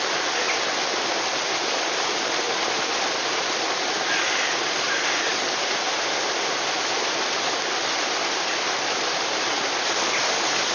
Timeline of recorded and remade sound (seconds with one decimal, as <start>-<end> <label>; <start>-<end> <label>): 0.0-10.7 recorded